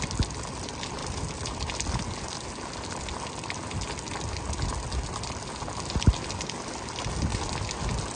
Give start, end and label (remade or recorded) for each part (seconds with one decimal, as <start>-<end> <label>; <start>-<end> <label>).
0.0-8.2 recorded